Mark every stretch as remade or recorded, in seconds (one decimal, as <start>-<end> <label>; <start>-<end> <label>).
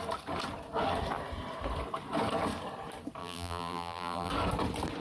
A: 0.0-3.2 recorded; 3.2-4.3 remade; 4.3-5.0 recorded